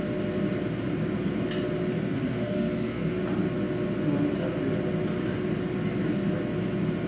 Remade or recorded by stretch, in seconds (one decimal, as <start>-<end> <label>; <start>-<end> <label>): 0.0-1.9 recorded; 1.9-3.2 remade; 3.2-7.1 recorded